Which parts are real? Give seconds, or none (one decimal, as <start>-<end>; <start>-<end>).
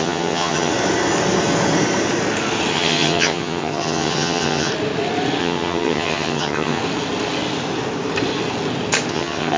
0.7-2.7; 4.7-5.4; 6.8-9.1